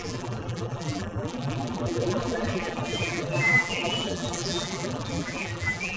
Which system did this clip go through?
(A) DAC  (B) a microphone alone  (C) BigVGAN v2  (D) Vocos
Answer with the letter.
C